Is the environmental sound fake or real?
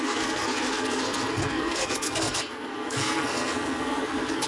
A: fake